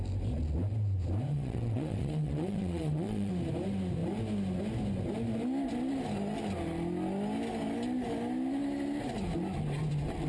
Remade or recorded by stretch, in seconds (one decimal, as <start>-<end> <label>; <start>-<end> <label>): 0.0-1.3 recorded; 1.3-3.3 remade; 3.3-10.3 recorded